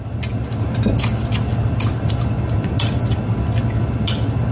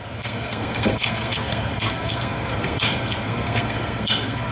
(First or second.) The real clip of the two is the first